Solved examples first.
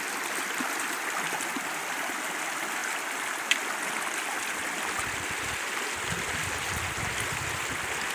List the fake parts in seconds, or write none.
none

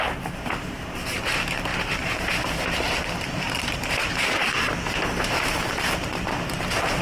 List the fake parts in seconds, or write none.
0.0-7.0

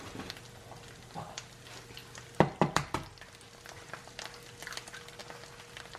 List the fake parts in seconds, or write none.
none

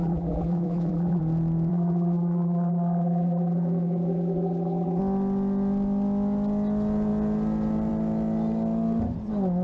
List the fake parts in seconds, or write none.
0.0-1.2; 1.7-5.0